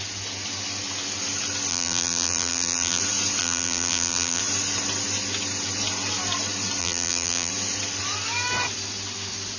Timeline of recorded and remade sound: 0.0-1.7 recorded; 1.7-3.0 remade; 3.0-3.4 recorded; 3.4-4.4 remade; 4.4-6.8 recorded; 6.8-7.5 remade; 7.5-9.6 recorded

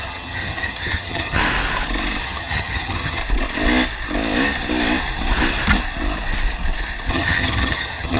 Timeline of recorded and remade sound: 0.0-1.4 remade; 1.4-2.2 recorded; 2.2-3.2 remade; 3.2-7.1 recorded; 7.1-8.2 remade

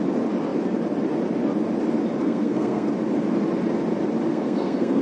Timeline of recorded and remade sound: 0.0-2.2 recorded; 2.2-2.9 remade; 2.9-4.3 recorded; 4.3-5.0 remade

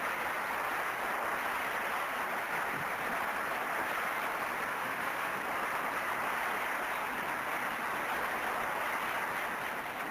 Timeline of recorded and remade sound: 0.0-4.7 recorded; 4.7-5.4 remade; 5.4-10.1 recorded

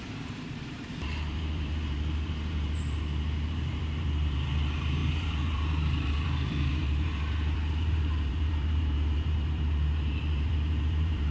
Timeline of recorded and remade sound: 0.0-11.3 remade

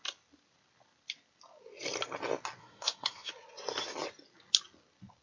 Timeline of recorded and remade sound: 0.0-2.6 recorded; 2.6-3.3 remade; 3.3-5.2 recorded

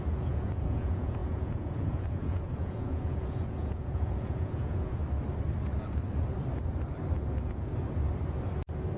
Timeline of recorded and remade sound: 0.0-5.0 remade; 5.0-7.3 recorded; 7.3-7.7 remade; 7.7-9.0 recorded

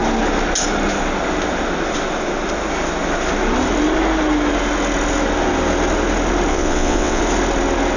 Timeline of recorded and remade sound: 0.0-6.5 recorded; 6.5-7.2 remade; 7.2-8.0 recorded